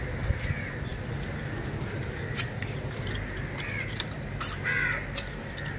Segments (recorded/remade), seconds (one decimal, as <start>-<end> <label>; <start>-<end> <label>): 0.0-5.8 recorded